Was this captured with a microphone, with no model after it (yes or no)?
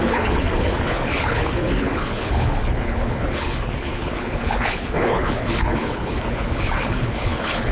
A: no